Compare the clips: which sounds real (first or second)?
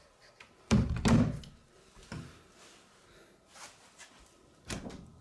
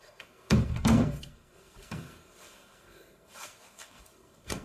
first